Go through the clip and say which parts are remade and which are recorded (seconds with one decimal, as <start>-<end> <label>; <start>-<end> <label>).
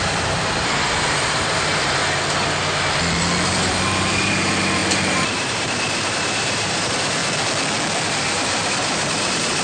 0.0-2.0 remade; 2.0-3.6 recorded; 3.6-7.2 remade; 7.2-8.1 recorded; 8.1-9.6 remade